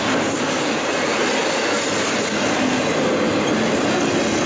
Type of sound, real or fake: real